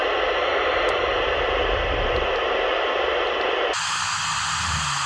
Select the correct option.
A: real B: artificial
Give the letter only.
A